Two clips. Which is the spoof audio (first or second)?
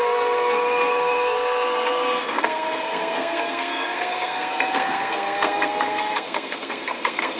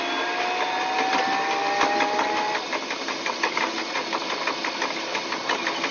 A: first